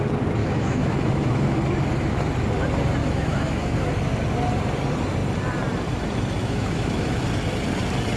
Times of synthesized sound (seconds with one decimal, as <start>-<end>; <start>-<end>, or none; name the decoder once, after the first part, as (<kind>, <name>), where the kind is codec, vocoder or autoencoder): 0.4-1.6 (autoencoder, DAC-VAE); 3.0-3.9; 6.4-7.2